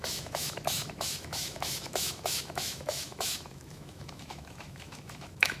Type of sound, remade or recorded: remade